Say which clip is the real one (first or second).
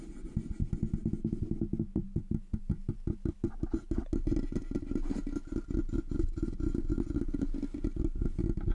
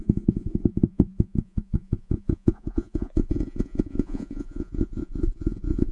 first